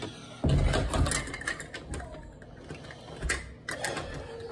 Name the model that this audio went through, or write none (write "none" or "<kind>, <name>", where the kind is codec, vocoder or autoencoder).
none